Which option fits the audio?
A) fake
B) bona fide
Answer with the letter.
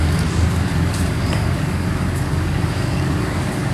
A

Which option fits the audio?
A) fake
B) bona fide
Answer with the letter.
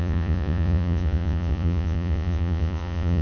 A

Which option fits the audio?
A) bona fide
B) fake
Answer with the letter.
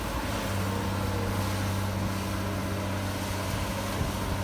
A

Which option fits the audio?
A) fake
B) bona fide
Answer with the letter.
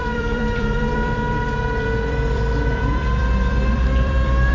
A